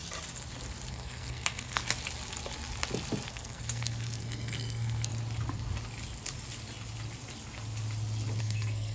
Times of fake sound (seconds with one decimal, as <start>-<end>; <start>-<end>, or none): 0.9-1.8; 3.3-5.1; 8.4-8.9